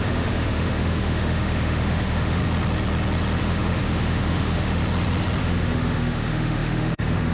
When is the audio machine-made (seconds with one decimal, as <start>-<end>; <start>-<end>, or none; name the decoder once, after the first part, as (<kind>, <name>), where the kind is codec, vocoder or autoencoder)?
0.0-2.4 (autoencoder, DAC-VAE); 3.4-4.8; 5.4-7.3